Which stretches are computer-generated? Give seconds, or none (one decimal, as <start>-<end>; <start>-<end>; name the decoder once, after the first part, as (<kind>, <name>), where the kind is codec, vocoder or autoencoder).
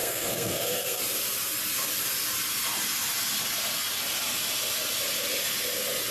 0.0-1.0 (codec, SNAC)